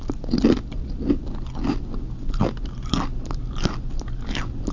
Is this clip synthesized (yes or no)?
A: no